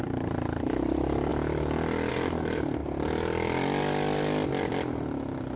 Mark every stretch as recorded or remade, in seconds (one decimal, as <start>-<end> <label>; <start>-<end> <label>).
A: 0.0-1.3 remade; 1.3-2.1 recorded; 2.1-2.8 remade; 2.8-5.6 recorded